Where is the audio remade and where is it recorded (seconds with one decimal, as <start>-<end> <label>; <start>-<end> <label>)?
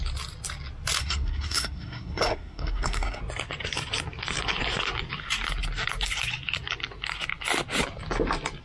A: 0.0-1.0 recorded; 1.0-3.2 remade; 3.2-8.6 recorded